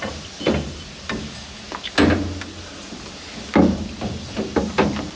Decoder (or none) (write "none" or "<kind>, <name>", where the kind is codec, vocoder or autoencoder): none